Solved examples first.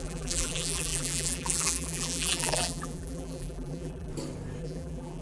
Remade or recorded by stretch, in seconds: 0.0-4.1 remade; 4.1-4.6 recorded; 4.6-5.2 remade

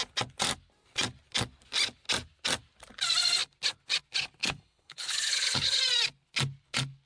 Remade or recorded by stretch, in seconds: 0.0-4.4 recorded; 4.4-5.8 remade; 5.8-7.1 recorded

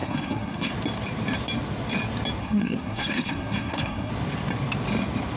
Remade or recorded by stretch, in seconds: 0.0-0.7 remade; 0.7-2.4 recorded; 2.4-4.1 remade; 4.1-5.4 recorded

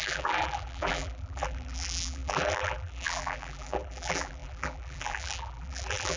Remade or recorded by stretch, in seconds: 0.0-6.2 remade